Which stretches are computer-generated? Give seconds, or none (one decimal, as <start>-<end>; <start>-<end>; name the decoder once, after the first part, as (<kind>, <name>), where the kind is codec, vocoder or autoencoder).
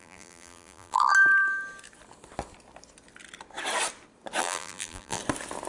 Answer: 0.0-1.1 (vocoder, BigVGAN v2); 4.4-5.2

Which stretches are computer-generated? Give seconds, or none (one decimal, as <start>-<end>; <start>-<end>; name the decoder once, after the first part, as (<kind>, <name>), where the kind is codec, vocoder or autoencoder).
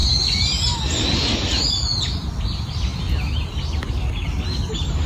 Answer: none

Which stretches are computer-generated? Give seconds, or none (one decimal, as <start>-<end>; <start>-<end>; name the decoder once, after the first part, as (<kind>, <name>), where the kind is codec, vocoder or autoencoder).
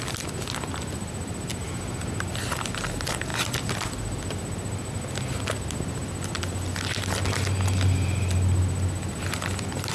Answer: none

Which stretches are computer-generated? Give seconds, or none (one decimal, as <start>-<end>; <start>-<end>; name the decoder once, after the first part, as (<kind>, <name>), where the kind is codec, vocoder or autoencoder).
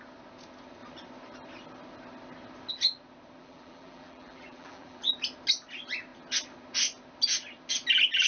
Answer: 3.4-5.1 (vocoder, BigVGAN v2)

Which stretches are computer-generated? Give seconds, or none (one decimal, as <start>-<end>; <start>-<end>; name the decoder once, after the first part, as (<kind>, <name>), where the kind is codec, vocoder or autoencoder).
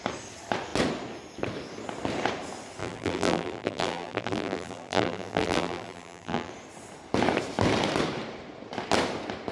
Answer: 2.8-6.5 (vocoder, BigVGAN v2)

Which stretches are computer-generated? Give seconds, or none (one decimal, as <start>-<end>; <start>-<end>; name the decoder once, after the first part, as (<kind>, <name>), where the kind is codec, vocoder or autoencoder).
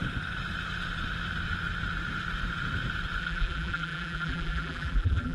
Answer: 3.2-5.3 (vocoder, BigVGAN v2)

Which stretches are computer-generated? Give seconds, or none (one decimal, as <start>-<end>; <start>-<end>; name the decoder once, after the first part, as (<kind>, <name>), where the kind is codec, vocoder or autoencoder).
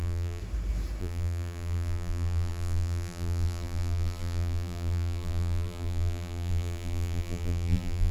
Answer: 0.0-0.4 (vocoder, BigVGAN v2); 1.0-8.1